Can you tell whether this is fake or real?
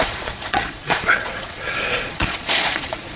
fake